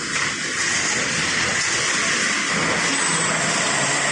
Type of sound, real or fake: real